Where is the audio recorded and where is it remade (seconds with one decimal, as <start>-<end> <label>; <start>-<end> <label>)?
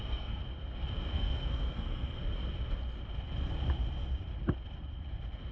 0.0-0.4 remade; 0.4-1.1 recorded; 1.1-2.2 remade; 2.2-5.5 recorded